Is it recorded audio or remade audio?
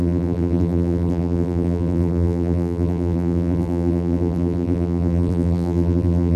remade